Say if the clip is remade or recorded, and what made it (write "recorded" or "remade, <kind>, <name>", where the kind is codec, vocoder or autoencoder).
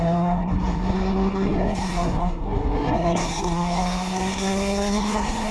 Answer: remade, codec, SNAC